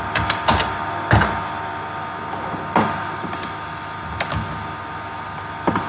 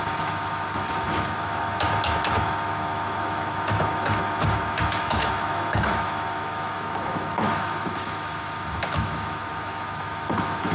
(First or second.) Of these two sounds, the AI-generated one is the second